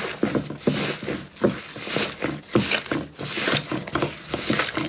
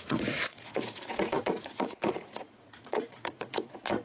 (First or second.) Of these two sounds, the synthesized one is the second